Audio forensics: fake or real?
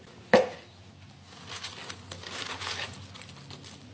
real